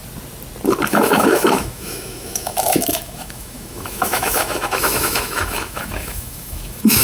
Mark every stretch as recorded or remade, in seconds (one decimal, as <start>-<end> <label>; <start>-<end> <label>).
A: 0.0-0.9 recorded; 0.9-7.0 remade